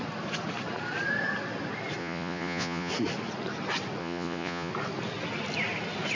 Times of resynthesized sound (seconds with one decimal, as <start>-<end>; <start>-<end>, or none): 2.0-2.9; 4.0-4.7